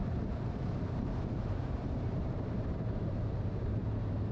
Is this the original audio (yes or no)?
no